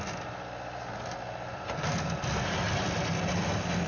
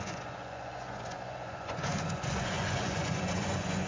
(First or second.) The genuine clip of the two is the first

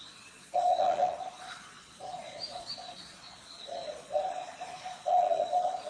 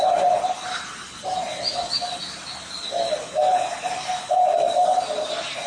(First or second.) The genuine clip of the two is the second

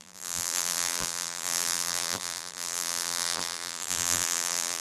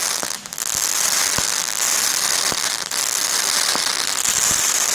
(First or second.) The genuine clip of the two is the second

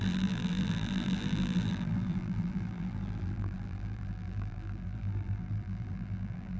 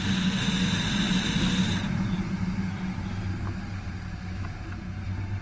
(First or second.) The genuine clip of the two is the second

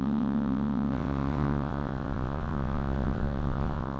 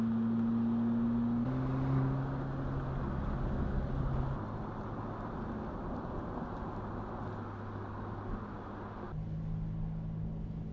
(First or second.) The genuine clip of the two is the second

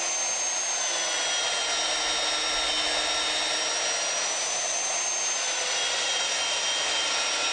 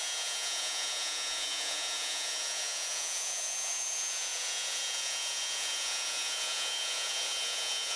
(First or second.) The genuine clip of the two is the first